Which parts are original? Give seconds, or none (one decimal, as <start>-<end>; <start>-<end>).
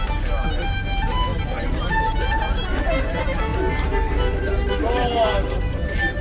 0.0-1.3; 3.1-3.5